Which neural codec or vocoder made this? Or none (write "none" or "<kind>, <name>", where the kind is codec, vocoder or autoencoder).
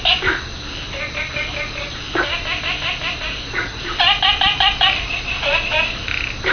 none